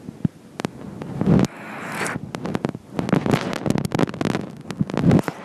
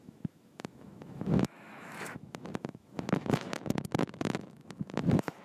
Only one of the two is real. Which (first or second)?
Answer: first